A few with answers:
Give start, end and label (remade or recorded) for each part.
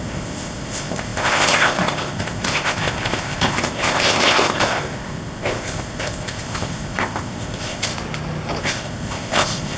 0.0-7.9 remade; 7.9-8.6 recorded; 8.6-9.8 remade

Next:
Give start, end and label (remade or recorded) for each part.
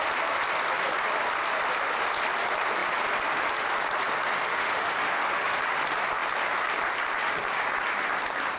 0.0-4.5 recorded; 4.5-5.6 remade; 5.6-8.6 recorded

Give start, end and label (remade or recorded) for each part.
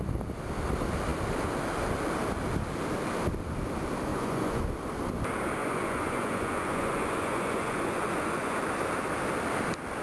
0.0-4.1 recorded; 4.1-4.6 remade; 4.6-5.6 recorded; 5.6-8.6 remade; 8.6-10.0 recorded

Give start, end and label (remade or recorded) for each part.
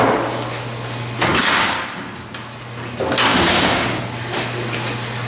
0.0-1.3 recorded; 1.3-1.8 remade; 1.8-3.3 recorded; 3.3-4.0 remade; 4.0-5.3 recorded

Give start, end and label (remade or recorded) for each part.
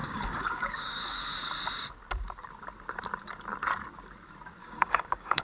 0.0-1.5 remade; 1.5-4.6 recorded; 4.6-5.4 remade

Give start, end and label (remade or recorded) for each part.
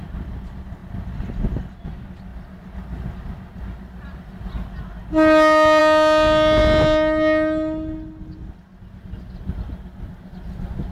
0.0-10.9 recorded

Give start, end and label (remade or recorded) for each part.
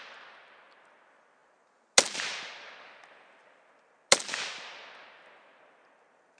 0.0-6.4 recorded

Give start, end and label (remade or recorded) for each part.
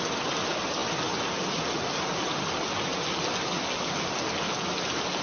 0.0-5.2 recorded